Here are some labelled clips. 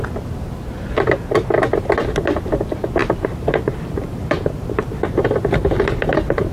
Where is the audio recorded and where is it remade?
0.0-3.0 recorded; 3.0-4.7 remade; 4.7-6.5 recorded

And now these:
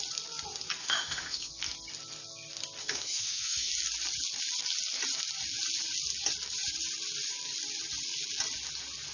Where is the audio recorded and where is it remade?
0.0-0.8 recorded; 0.8-1.5 remade; 1.5-2.8 recorded; 2.8-3.7 remade; 3.7-9.1 recorded

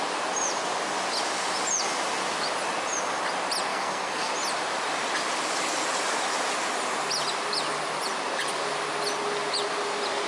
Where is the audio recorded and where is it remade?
0.0-3.7 recorded; 3.7-4.3 remade; 4.3-10.3 recorded

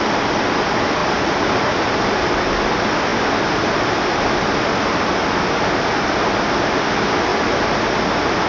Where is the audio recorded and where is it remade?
0.0-1.0 recorded; 1.0-2.2 remade; 2.2-8.5 recorded

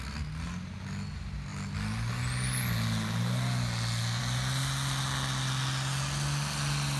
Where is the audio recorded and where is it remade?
0.0-7.0 recorded